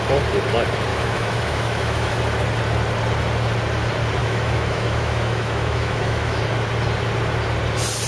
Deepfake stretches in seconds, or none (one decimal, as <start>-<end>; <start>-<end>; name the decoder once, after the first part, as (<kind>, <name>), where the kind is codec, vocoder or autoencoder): 0.9-2.2 (autoencoder, DAC-VAE); 4.2-6.4